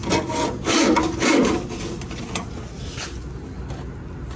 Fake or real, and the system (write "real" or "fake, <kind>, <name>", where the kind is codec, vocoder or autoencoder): real